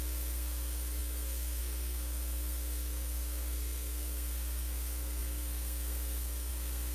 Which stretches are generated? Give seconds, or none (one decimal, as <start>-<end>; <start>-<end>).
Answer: 0.0-6.9